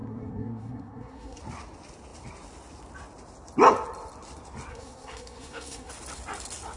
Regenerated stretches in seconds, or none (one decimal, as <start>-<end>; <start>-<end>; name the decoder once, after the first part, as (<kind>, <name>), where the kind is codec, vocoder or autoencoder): 0.0-1.4 (codec, SNAC); 4.7-5.9